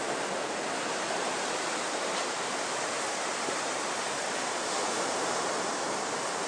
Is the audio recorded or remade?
remade